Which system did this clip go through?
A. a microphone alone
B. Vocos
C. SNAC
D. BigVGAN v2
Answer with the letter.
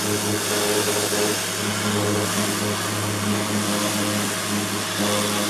A